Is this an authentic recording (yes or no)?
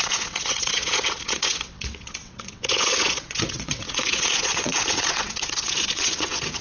no